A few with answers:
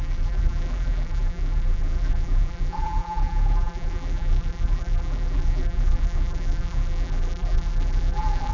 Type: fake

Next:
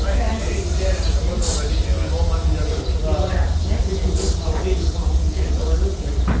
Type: real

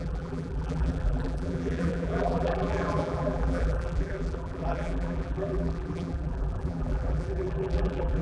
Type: fake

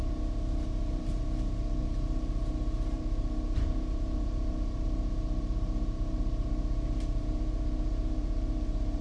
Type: fake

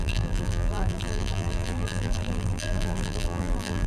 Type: fake